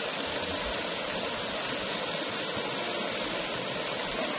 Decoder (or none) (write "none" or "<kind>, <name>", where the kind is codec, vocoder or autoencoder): none